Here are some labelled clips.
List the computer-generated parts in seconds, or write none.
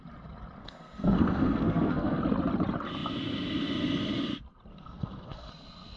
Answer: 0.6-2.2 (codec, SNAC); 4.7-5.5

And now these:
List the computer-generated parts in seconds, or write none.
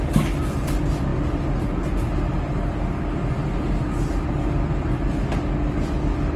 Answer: none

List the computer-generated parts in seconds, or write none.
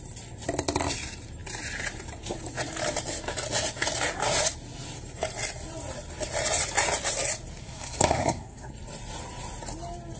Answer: 7.6-8.7 (codec, SNAC)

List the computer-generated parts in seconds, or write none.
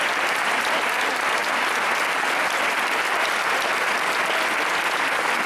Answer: none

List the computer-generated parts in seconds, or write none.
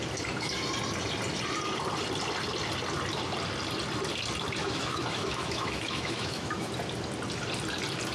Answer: 4.6-6.7 (autoencoder, DAC-VAE)